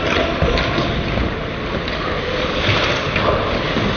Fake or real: real